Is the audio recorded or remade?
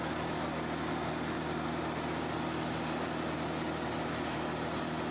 recorded